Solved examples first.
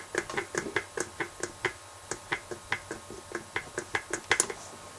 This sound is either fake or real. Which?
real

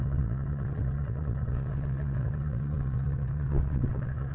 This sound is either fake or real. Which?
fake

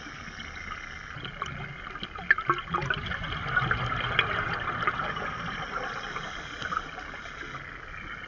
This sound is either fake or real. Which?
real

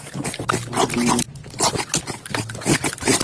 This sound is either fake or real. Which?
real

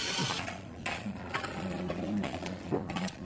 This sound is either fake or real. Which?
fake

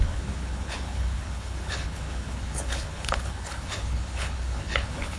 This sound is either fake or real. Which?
fake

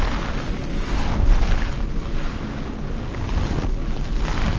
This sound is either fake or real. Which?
real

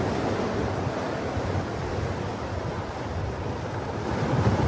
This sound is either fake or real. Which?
real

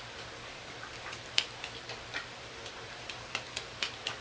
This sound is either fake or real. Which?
fake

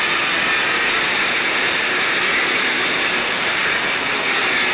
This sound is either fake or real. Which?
real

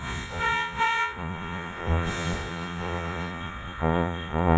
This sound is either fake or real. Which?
fake